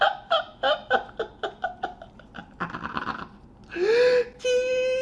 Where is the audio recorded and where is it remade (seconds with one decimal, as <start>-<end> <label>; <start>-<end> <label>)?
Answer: 0.0-5.0 recorded